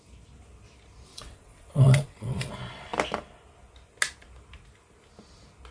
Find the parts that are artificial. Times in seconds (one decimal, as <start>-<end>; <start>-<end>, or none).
1.1-2.5